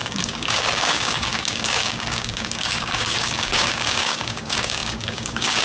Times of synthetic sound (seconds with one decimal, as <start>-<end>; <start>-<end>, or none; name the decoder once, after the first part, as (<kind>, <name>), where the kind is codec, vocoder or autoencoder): 0.0-5.6 (codec, DAC)